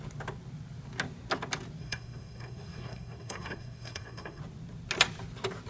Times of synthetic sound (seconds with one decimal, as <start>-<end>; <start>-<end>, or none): 1.8-4.4